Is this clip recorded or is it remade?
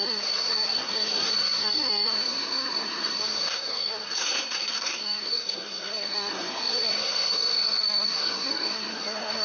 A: remade